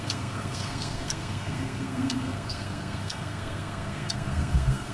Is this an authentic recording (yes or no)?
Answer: no